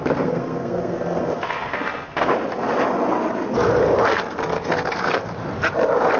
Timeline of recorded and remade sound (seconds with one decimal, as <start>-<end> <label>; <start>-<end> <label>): 0.0-2.3 remade; 2.3-4.1 recorded; 4.1-5.2 remade; 5.2-6.2 recorded